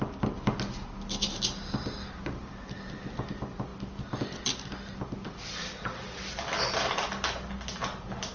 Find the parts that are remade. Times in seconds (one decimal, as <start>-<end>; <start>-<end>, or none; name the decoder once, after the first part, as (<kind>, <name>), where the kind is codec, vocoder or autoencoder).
none

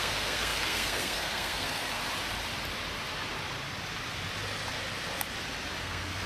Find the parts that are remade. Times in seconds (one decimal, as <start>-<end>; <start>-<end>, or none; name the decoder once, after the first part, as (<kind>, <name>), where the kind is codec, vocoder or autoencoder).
0.0-2.0 (codec, SNAC); 5.8-6.3

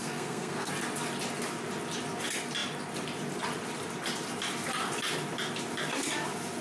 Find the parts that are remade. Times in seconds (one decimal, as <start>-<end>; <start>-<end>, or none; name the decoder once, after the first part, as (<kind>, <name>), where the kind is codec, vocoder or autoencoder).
0.0-0.7 (codec, SNAC)

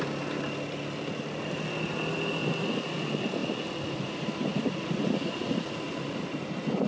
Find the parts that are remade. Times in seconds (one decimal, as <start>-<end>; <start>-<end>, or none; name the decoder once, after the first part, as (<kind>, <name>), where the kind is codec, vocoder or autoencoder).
none

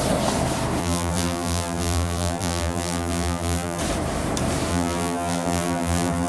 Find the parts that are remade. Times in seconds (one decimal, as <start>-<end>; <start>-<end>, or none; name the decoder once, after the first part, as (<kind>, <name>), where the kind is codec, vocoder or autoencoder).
0.8-3.8 (vocoder, BigVGAN v2); 4.7-6.3

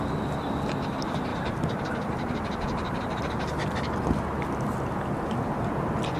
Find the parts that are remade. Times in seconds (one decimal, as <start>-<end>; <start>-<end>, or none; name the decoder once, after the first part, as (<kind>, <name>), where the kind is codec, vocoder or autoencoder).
1.3-3.2 (vocoder, BigVGAN v2)

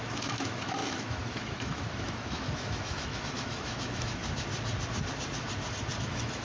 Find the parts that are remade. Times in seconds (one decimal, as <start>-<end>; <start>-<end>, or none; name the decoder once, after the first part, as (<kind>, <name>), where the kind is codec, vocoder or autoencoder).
0.0-4.2 (autoencoder, DAC-VAE); 6.0-6.4